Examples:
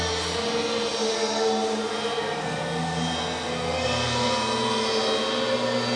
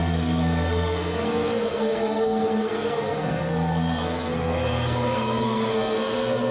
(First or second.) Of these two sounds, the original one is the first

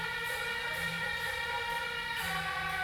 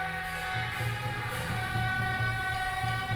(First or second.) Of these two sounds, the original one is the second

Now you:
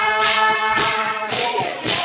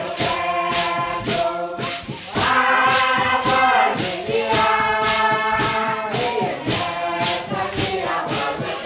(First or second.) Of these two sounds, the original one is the second